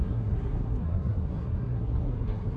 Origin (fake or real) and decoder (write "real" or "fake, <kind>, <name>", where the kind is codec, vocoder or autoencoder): fake, codec, SNAC